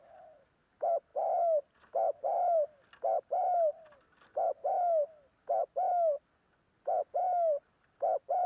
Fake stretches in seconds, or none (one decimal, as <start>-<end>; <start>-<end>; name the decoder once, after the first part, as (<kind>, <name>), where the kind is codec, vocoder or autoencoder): none